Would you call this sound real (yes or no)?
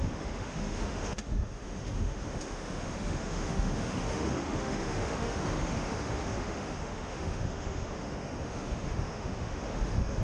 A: no